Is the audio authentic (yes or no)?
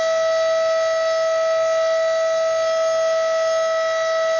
yes